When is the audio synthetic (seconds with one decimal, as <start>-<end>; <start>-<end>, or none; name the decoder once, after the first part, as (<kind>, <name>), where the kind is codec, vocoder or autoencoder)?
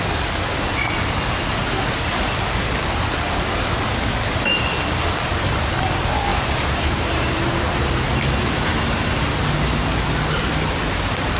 6.3-9.1 (vocoder, BigVGAN v2)